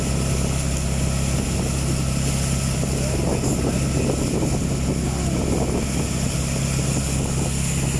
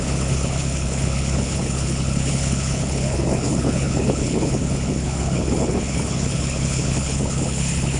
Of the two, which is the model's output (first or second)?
second